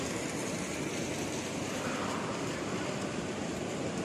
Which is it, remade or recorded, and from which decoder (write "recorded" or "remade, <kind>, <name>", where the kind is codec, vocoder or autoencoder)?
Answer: recorded